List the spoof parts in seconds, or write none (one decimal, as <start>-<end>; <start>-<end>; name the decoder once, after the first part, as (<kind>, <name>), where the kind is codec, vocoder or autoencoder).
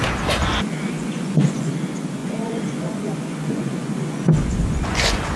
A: 0.4-1.7 (vocoder, Vocos); 2.2-5.4